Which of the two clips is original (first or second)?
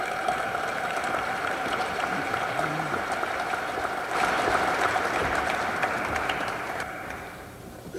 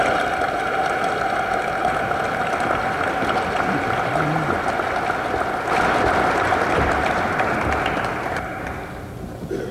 second